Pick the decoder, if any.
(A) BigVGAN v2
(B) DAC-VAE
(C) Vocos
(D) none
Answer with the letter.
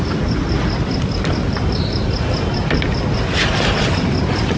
D